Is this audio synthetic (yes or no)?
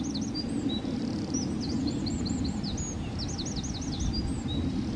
no